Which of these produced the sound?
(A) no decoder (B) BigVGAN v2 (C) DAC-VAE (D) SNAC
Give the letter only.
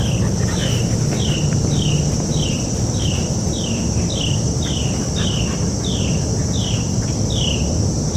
A